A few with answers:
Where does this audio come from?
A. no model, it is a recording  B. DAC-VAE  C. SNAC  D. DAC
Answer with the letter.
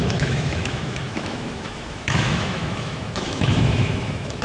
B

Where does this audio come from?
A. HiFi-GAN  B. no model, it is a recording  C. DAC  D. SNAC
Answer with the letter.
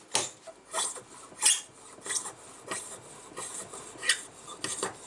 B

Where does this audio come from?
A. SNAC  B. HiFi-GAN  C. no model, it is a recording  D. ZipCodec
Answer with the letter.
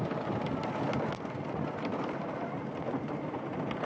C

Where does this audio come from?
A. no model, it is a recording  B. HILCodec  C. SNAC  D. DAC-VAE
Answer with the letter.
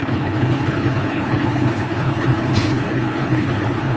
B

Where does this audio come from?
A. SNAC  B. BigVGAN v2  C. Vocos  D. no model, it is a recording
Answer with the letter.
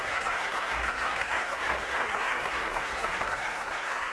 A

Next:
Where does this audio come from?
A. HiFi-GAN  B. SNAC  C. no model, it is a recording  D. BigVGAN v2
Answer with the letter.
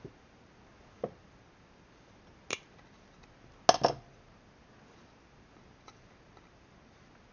C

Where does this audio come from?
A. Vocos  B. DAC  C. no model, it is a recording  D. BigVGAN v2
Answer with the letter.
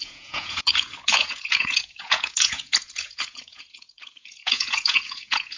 A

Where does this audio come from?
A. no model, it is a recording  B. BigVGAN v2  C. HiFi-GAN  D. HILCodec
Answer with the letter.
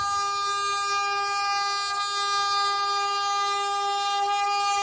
A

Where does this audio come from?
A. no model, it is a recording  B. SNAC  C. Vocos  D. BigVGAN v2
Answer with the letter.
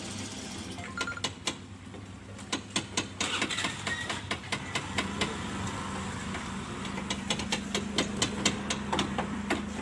A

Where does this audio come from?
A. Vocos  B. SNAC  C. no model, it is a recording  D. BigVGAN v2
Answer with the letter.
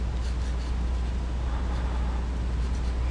C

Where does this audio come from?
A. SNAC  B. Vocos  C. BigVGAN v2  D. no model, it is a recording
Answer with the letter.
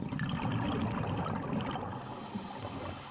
D